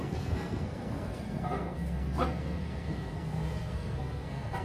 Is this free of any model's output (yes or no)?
no